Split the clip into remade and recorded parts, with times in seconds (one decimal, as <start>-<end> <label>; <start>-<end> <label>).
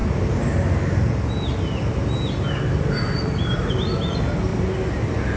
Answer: 0.0-5.4 recorded